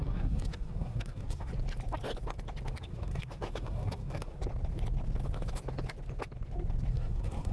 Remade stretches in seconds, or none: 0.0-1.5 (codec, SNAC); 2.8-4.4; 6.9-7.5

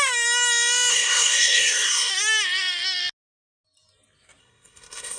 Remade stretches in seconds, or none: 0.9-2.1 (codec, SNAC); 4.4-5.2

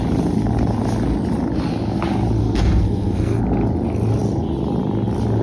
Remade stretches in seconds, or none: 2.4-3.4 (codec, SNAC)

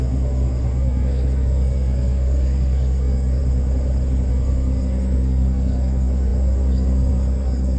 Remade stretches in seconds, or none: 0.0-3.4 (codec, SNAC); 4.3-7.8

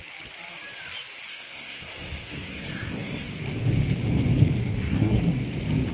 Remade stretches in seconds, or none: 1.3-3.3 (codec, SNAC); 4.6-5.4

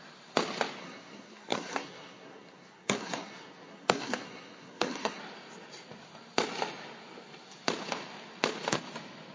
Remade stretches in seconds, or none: 0.8-5.2 (codec, SNAC)

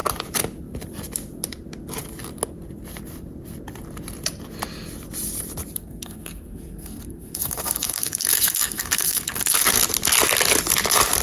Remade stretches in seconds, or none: 5.8-9.8 (codec, SNAC)

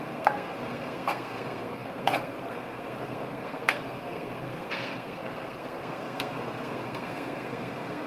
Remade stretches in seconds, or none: 0.0-8.1 (codec, SNAC)